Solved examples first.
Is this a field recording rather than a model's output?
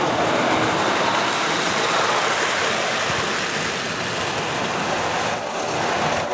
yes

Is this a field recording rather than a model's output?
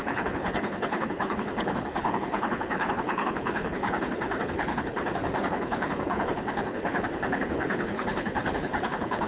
no